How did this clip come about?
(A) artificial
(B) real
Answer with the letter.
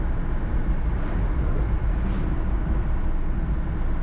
B